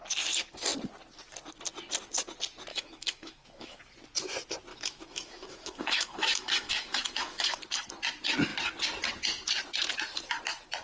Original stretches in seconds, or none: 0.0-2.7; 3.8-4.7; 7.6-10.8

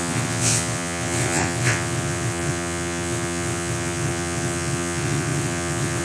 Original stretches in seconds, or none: none

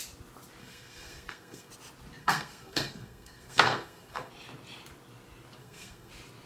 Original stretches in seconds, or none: 0.0-0.6; 1.7-2.2; 4.3-5.6; 6.1-6.5

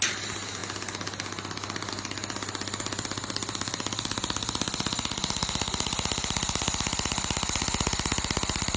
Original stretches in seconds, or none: 0.0-8.8